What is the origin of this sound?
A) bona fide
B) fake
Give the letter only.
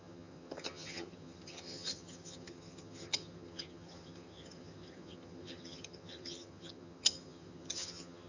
B